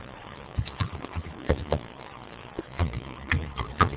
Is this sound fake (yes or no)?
yes